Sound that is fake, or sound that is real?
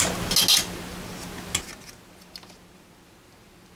real